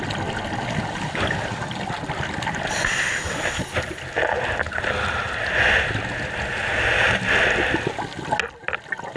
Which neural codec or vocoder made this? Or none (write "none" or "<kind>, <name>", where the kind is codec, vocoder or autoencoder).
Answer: none